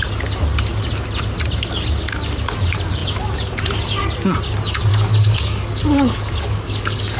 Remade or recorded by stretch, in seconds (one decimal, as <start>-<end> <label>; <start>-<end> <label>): 0.0-4.9 recorded; 4.9-7.2 remade